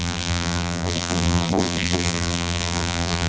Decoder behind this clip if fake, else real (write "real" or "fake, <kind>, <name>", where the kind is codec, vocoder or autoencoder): fake, vocoder, BigVGAN v2